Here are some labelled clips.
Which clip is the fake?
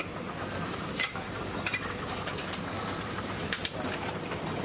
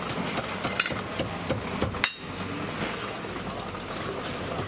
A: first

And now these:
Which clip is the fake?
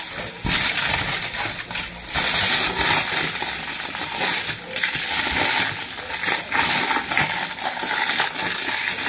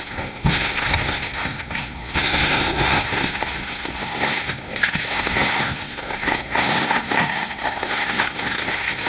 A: second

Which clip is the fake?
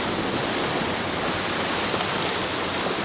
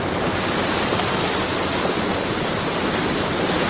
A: second